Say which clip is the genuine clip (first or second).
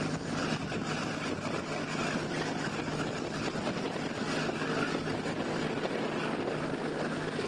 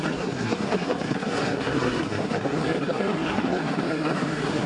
first